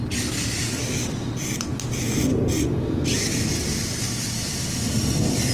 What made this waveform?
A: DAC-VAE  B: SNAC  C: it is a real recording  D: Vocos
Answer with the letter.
C